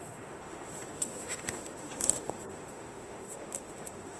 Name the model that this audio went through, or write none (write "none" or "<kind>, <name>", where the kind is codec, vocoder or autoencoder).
autoencoder, DAC-VAE